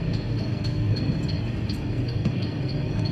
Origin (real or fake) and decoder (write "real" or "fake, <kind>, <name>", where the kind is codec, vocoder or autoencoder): fake, codec, SNAC